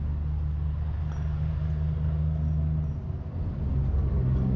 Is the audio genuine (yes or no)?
yes